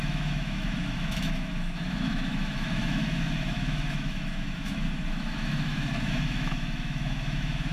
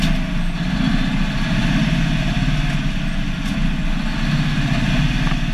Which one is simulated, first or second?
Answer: first